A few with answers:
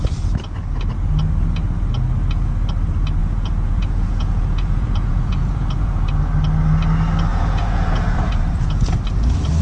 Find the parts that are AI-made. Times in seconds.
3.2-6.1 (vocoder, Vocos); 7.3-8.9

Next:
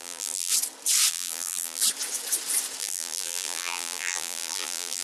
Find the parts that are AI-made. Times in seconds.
0.0-0.5 (vocoder, BigVGAN v2); 1.1-1.8; 2.8-5.0

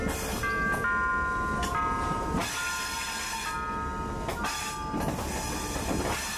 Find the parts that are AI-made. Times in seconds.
none

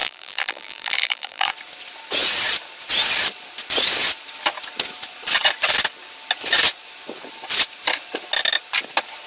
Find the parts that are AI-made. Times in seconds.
0.0-1.5 (vocoder, BigVGAN v2)

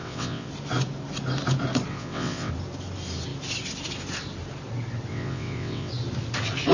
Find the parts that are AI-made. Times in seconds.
0.0-0.5 (vocoder, WaveNeXt); 1.9-2.5; 5.1-5.9

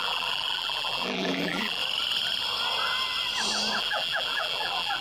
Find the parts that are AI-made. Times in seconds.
0.0-1.8 (vocoder, BigVGAN v2); 3.8-5.0

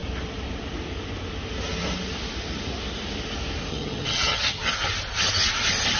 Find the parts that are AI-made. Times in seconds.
3.7-4.6 (vocoder, HiFi-GAN)

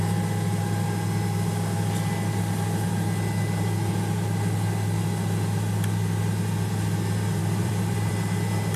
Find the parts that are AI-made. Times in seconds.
7.4-8.1 (vocoder, BigVGAN v2)